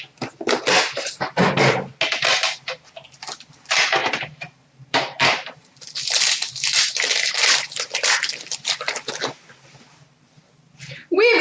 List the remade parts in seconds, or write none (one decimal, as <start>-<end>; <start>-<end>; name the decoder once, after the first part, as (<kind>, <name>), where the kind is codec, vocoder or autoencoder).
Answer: 4.0-8.7 (vocoder, BigVGAN v2)

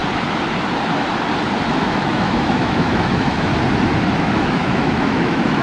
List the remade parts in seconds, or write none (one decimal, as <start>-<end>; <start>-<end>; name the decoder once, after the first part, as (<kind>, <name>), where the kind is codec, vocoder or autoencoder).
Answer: 1.7-3.5 (autoencoder, DAC-VAE); 4.2-5.6

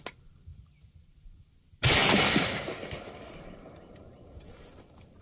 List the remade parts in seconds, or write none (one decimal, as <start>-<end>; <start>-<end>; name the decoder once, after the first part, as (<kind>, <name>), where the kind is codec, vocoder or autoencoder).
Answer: none